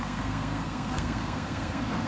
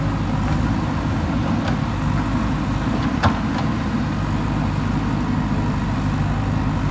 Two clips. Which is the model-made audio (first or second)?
first